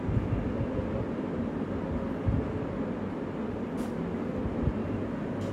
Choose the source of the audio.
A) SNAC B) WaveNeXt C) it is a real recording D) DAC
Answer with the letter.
C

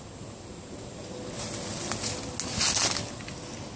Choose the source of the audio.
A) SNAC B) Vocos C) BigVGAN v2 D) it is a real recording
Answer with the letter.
D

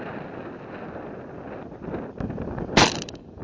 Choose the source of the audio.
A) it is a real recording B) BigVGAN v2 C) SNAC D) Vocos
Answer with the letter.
A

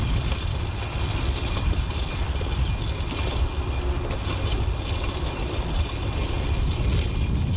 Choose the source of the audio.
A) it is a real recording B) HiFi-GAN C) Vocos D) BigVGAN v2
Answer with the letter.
A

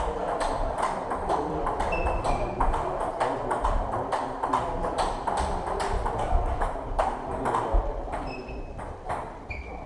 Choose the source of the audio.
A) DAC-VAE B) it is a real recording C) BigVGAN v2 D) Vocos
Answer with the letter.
C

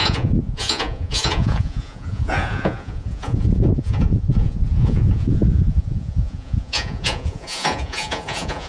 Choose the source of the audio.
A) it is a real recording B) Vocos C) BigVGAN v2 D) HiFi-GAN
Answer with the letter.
B